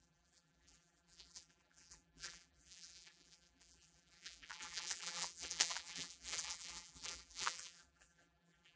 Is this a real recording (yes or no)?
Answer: no